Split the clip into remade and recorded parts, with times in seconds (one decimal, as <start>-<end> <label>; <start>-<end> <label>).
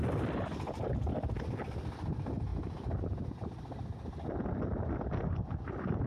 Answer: 0.0-2.5 recorded; 2.5-4.3 remade; 4.3-6.1 recorded